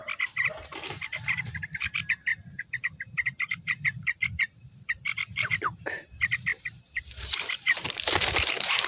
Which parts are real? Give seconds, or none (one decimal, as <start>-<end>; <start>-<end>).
0.0-0.5